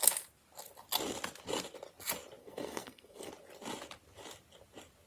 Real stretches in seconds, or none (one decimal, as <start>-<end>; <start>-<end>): 0.0-2.4; 3.3-5.1